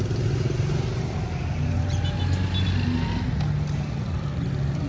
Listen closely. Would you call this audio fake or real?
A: real